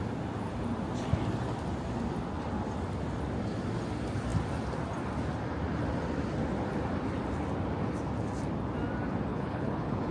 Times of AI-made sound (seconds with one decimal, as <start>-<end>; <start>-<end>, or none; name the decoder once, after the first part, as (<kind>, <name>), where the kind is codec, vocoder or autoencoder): 9.3-10.1 (codec, HILCodec)